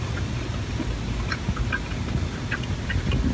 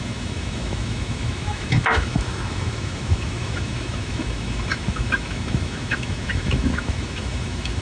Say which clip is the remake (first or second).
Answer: second